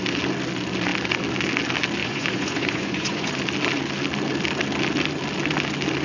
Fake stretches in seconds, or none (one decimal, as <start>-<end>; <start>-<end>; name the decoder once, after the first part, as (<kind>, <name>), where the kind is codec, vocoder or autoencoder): 2.0-3.3 (vocoder, Vocos)